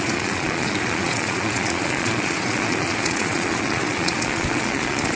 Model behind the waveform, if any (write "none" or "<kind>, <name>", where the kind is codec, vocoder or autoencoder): vocoder, Vocos